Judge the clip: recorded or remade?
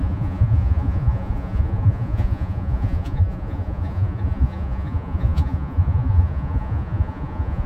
remade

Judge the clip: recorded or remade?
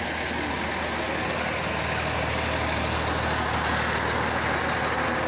recorded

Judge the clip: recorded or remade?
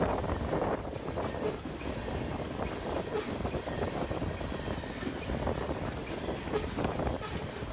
recorded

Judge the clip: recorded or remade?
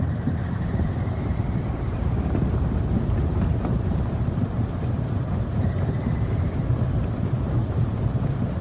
remade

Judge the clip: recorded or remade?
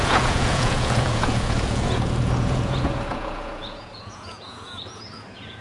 remade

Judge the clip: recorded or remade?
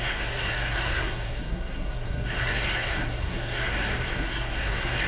remade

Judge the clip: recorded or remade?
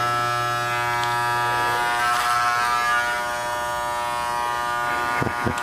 recorded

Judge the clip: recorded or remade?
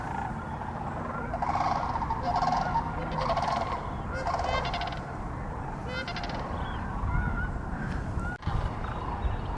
recorded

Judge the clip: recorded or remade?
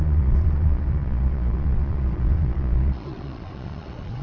remade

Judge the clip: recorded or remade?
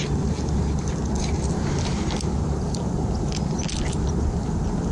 recorded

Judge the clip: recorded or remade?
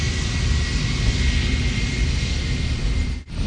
recorded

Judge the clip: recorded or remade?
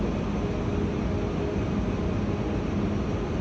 recorded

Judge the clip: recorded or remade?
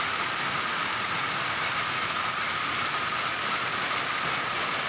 recorded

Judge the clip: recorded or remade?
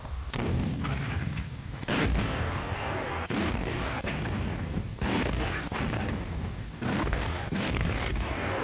remade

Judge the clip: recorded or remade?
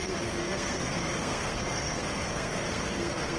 remade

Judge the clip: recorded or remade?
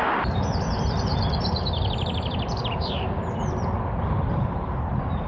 remade